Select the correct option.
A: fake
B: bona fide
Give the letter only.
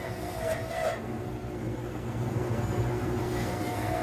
A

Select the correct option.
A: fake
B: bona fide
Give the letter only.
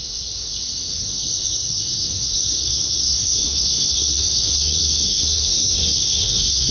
A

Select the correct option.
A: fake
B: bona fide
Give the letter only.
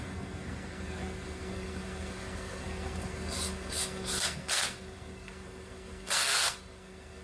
A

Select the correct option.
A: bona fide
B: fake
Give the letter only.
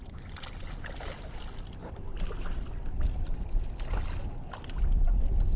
A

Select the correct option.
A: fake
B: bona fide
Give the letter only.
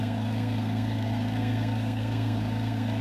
A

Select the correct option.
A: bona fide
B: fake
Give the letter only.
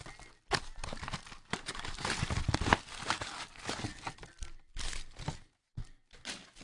A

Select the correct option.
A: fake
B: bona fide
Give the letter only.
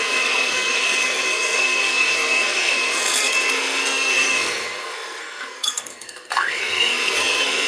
A